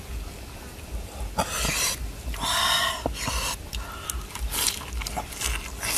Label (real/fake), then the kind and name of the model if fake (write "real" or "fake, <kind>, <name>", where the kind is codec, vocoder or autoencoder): real